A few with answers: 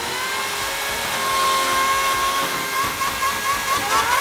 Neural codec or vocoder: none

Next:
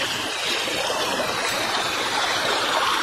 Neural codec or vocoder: vocoder, BigVGAN v2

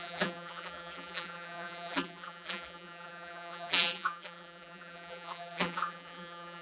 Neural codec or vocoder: vocoder, BigVGAN v2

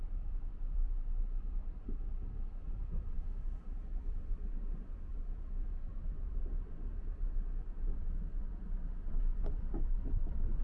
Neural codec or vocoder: vocoder, BigVGAN v2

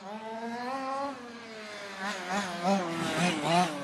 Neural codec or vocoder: none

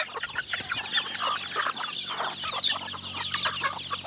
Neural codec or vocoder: none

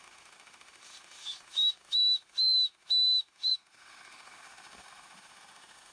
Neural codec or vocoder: autoencoder, DAC-VAE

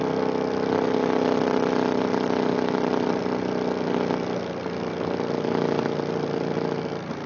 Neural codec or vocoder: none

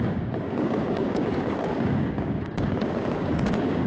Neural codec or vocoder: codec, DAC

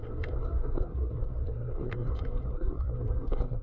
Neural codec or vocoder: codec, SNAC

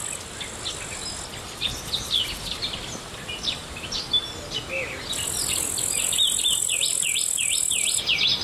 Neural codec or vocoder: none